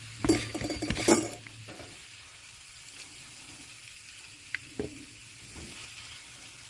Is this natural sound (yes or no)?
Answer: yes